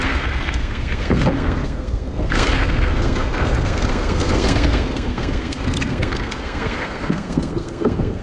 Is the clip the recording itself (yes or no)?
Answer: no